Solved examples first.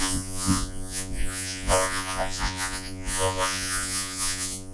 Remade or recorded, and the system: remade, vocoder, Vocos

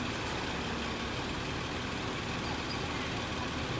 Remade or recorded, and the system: recorded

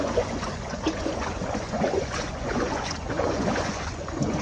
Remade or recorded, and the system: remade, vocoder, Vocos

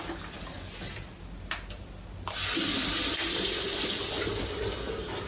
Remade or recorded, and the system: recorded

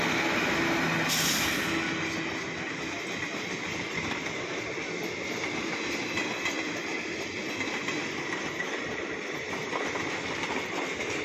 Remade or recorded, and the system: recorded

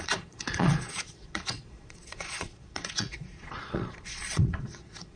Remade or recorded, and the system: remade, vocoder, Vocos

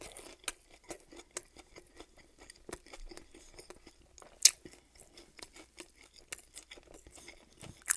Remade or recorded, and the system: recorded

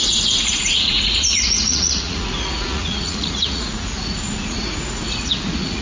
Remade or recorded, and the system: remade, vocoder, Vocos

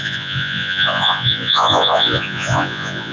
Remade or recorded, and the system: remade, vocoder, Vocos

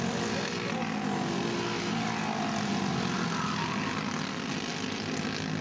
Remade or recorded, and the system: recorded